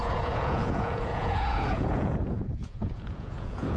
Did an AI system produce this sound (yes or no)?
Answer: yes